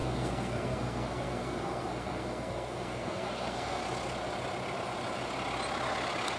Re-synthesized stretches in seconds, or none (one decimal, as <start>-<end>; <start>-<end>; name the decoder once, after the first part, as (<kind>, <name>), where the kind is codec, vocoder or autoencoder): 0.0-3.8 (codec, SNAC)